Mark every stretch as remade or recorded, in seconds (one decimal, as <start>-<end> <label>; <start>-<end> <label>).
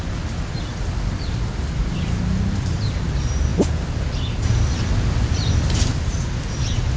0.0-7.0 recorded